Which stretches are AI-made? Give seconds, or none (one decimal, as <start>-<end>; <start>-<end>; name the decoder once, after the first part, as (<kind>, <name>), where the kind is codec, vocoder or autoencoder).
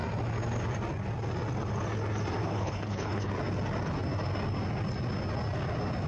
2.4-3.3 (codec, HILCodec)